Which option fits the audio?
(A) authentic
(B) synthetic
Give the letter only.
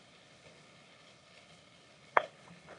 B